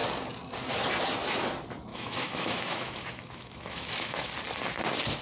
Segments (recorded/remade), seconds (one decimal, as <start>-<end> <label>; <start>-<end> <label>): 0.0-1.9 recorded; 1.9-4.3 remade; 4.3-5.2 recorded